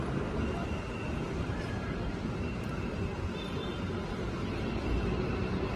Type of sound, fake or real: real